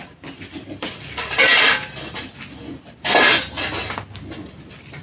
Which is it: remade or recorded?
recorded